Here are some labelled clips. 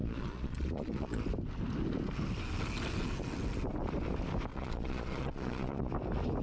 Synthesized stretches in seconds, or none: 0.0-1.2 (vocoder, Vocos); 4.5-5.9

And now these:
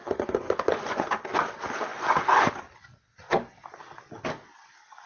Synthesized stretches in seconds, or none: 0.0-1.1 (vocoder, Vocos); 1.9-2.5

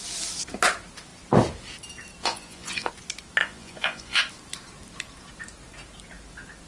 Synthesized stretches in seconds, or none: 2.2-2.9 (vocoder, Vocos); 3.4-4.2

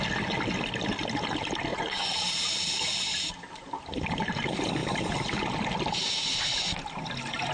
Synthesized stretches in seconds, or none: 1.7-2.2 (vocoder, Vocos)

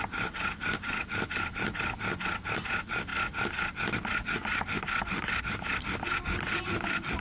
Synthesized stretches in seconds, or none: none

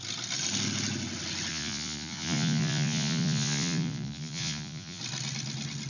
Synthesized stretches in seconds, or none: 1.5-5.0 (vocoder, Vocos)

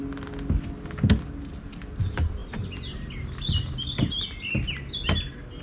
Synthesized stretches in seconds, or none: none

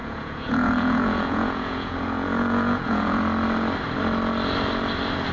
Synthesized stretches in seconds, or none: 0.0-3.2 (vocoder, Vocos)